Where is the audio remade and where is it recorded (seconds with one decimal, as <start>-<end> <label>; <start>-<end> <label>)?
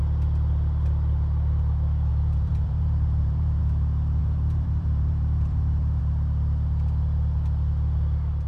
0.0-2.1 recorded; 2.1-3.6 remade; 3.6-4.2 recorded; 4.2-6.0 remade; 6.0-8.5 recorded